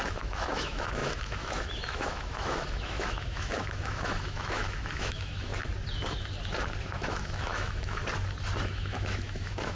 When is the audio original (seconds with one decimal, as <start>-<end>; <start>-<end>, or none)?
5.5-6.8; 8.0-8.6